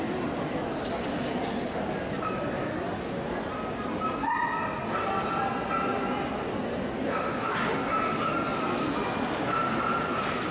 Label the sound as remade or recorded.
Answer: recorded